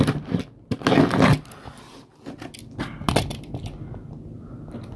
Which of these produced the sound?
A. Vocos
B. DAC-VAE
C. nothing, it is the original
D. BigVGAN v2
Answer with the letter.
C